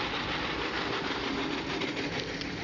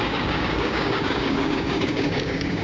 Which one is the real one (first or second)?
first